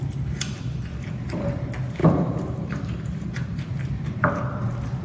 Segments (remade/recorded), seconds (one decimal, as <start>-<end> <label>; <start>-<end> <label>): 0.0-0.9 recorded; 0.9-1.5 remade; 1.5-2.0 recorded; 2.0-3.6 remade; 3.6-5.0 recorded